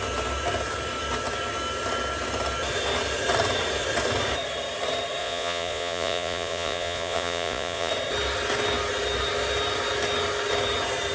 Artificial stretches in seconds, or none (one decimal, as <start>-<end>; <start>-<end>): 5.2-7.9